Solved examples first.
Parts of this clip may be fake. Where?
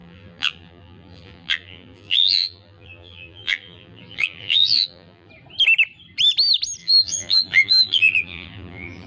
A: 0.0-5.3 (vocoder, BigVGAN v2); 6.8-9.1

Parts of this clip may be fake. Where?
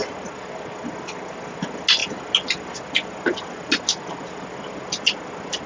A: none